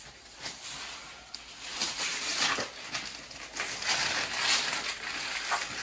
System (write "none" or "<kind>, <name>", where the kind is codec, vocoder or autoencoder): none